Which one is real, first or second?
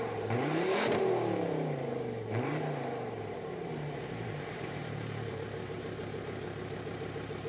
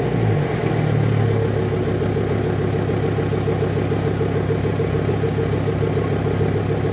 second